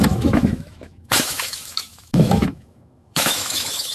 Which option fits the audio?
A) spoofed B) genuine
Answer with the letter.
A